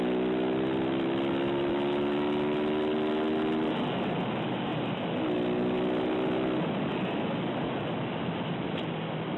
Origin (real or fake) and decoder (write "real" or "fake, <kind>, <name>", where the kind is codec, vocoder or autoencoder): real